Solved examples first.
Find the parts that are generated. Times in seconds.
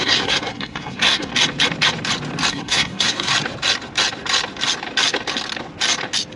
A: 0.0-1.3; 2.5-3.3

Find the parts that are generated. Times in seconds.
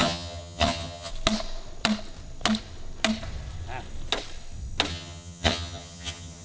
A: 0.0-1.1; 4.9-6.4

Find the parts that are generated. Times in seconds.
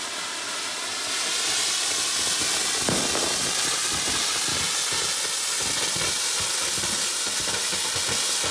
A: none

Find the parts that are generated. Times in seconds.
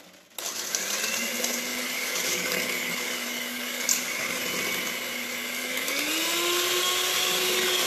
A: 1.7-4.4; 5.4-6.1